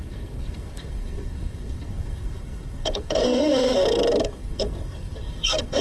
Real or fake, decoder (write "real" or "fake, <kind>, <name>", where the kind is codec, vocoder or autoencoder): fake, codec, SNAC